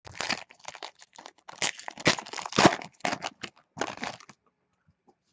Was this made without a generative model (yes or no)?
yes